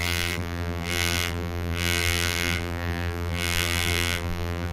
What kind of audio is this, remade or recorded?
remade